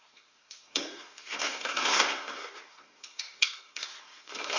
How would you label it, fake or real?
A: fake